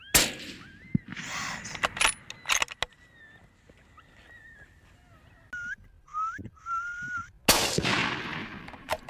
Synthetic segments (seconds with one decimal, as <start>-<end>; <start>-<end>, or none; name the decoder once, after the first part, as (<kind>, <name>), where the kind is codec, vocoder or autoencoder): 8.4-9.1 (vocoder, BigVGAN v2)